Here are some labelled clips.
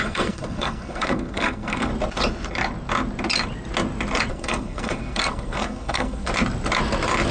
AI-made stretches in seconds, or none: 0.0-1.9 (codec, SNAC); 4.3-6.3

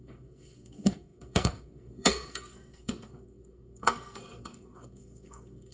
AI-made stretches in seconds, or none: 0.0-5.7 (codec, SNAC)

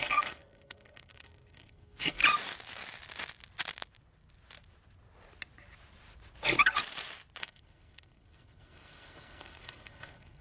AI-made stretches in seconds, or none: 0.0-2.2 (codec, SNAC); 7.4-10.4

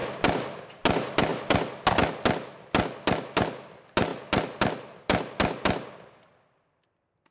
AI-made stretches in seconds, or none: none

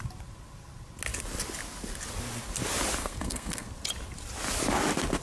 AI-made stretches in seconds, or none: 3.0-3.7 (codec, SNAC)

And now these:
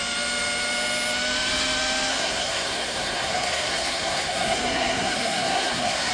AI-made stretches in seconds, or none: 2.1-6.1 (codec, SNAC)

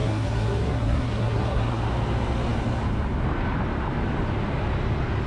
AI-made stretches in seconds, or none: 0.0-1.8 (codec, SNAC)